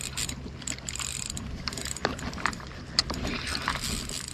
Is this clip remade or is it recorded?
recorded